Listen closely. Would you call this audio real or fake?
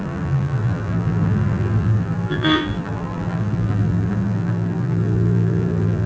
fake